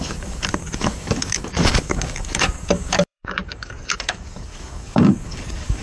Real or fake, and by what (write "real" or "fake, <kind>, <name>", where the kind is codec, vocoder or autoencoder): fake, codec, DAC